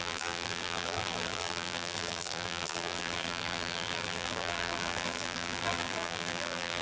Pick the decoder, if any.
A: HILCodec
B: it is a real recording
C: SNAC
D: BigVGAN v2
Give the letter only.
D